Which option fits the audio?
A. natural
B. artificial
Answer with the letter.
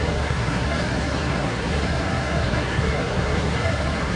B